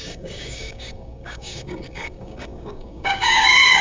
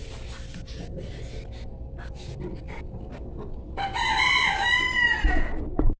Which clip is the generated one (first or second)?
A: first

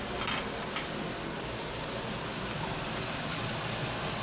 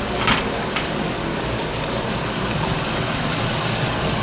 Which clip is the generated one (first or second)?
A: second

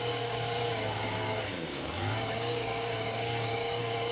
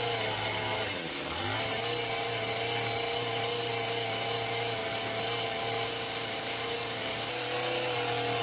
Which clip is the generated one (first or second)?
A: first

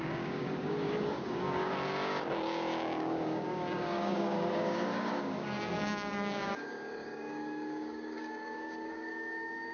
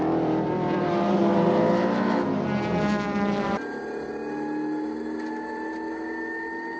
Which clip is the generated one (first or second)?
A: first